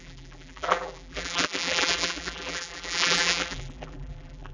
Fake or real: fake